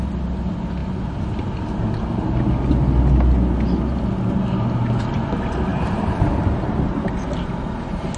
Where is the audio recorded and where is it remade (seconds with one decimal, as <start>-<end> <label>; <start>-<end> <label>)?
0.0-5.7 recorded; 5.7-6.4 remade; 6.4-8.2 recorded